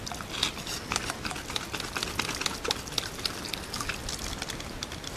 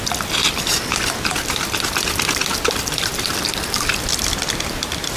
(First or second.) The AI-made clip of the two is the second